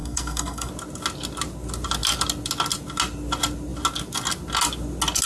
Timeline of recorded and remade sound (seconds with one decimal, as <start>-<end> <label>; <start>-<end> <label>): 0.0-0.7 remade; 0.7-5.3 recorded